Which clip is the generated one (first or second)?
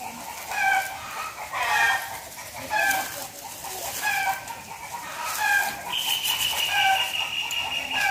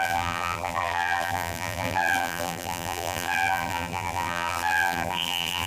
second